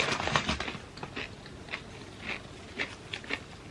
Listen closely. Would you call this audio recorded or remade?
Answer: recorded